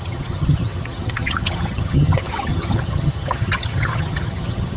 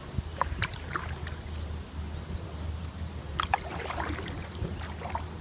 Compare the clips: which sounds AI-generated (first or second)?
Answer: first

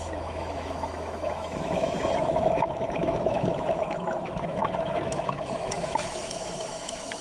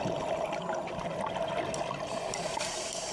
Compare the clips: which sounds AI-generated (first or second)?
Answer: first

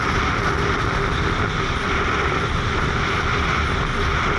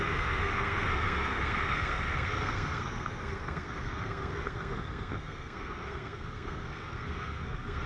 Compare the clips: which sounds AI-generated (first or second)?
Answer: second